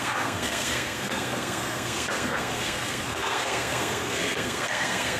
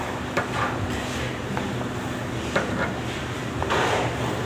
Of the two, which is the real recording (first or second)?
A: second